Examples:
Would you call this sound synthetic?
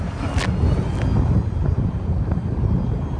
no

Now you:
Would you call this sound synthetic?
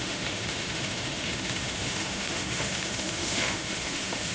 yes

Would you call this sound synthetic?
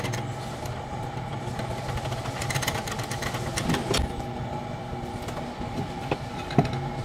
no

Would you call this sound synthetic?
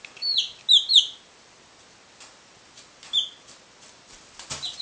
no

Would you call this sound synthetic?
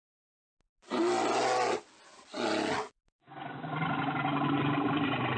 no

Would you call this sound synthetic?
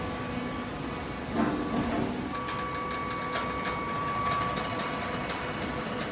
no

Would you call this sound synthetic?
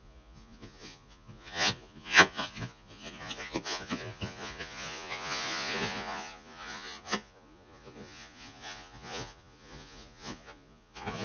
yes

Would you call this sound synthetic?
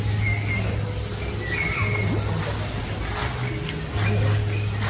no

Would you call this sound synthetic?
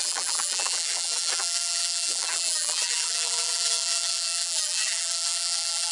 yes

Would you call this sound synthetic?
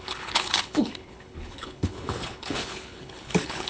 yes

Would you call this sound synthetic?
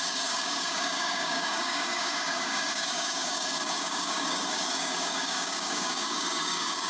yes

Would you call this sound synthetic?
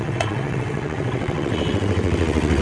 yes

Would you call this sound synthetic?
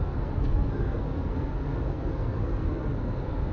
yes